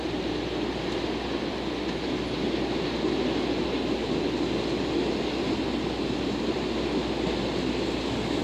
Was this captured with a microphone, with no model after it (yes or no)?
yes